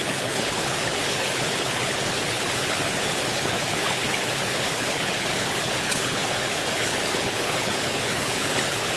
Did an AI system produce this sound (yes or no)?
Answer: yes